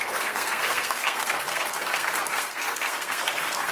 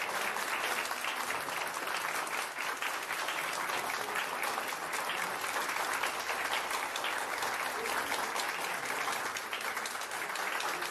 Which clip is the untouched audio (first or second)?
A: second